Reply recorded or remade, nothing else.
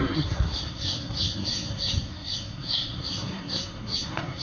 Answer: remade